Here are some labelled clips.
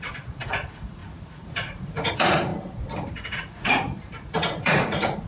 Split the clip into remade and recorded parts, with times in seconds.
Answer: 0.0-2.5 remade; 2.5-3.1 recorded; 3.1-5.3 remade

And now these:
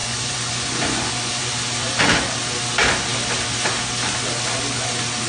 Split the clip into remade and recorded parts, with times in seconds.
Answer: 0.0-1.5 remade; 1.5-5.3 recorded